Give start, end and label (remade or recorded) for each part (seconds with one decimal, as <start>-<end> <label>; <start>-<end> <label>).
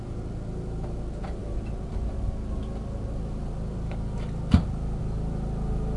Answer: 0.0-6.0 recorded